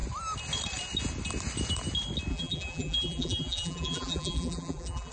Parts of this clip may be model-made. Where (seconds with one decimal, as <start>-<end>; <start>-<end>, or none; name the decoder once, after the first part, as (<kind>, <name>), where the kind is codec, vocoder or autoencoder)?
2.3-5.1 (vocoder, BigVGAN v2)